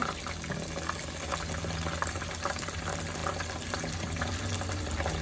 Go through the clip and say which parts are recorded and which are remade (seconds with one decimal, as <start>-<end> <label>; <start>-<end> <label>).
0.0-5.2 recorded